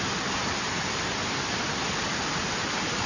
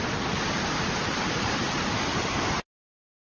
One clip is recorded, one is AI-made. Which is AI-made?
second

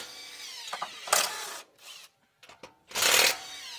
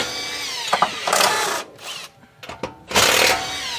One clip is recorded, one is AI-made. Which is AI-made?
first